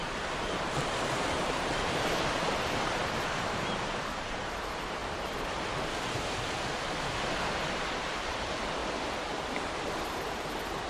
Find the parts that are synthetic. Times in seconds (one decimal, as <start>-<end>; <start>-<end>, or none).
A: 0.0-5.0; 7.6-8.8; 10.1-10.9